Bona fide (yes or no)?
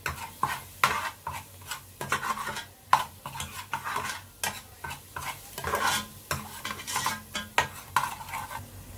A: yes